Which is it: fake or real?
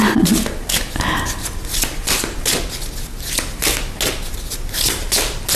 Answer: real